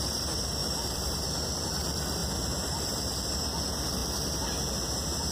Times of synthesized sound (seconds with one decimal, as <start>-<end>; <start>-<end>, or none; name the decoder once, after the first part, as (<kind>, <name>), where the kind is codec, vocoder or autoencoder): 0.6-1.7 (vocoder, BigVGAN v2); 2.2-3.3